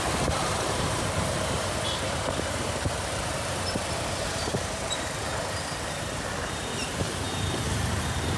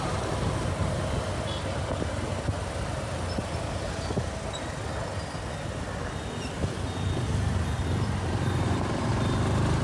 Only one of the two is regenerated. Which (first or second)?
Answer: first